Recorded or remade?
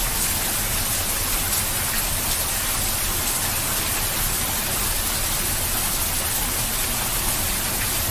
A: recorded